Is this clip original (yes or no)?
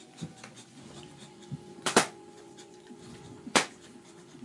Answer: no